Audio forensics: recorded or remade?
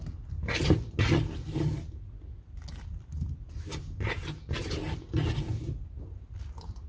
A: recorded